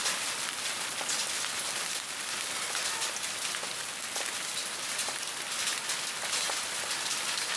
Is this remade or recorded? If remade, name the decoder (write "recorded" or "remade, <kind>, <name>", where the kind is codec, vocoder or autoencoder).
recorded